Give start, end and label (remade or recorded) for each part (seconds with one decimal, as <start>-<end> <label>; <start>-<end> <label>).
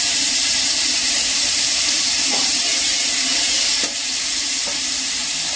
0.0-5.6 remade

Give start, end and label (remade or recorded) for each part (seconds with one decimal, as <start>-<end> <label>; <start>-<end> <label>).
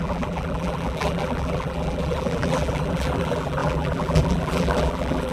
0.0-5.3 remade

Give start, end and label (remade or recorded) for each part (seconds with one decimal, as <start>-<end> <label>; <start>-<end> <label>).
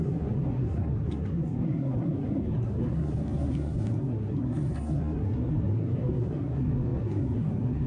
0.0-7.9 remade